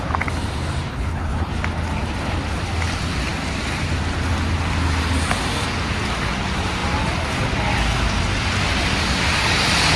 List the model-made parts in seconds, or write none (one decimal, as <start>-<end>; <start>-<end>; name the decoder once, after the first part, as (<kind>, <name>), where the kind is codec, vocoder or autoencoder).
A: 0.9-1.5 (codec, HILCodec)